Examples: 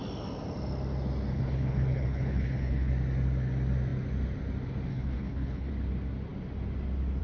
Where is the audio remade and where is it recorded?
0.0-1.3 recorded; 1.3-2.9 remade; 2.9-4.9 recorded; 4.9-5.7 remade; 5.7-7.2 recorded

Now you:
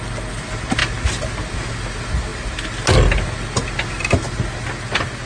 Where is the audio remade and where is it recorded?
0.0-5.3 recorded

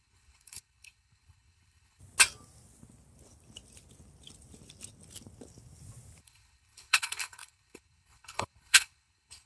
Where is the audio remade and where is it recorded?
0.0-2.0 remade; 2.0-6.2 recorded; 6.2-9.5 remade

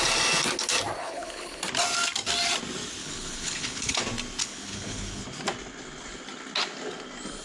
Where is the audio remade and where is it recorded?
0.0-1.0 recorded; 1.0-1.6 remade; 1.6-3.0 recorded; 3.0-4.0 remade; 4.0-4.4 recorded; 4.4-5.2 remade; 5.2-7.4 recorded

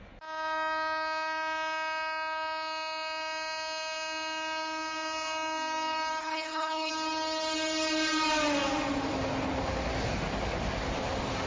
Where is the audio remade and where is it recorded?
0.0-6.2 recorded; 6.2-6.9 remade; 6.9-11.5 recorded